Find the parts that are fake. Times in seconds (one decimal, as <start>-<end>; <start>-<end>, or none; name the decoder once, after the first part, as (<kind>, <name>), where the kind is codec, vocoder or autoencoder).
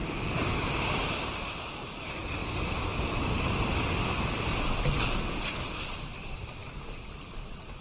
0.0-0.7 (codec, DAC)